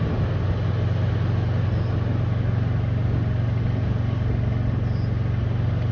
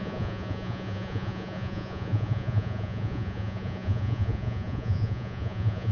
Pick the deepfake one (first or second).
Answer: second